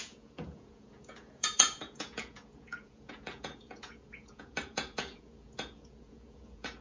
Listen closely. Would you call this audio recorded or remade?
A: remade